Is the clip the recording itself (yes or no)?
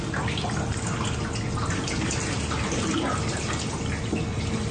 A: yes